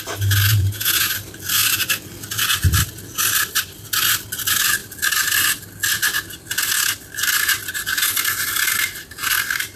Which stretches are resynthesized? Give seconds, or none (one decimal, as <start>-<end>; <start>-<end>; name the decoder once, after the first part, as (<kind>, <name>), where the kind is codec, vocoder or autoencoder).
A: 0.5-1.1 (vocoder, Vocos)